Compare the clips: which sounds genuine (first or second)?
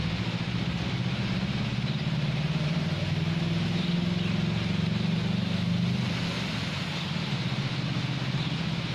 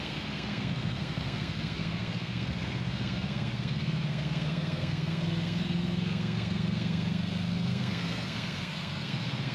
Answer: first